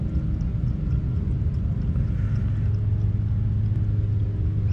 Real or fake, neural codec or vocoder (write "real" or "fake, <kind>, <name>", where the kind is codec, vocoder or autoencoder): real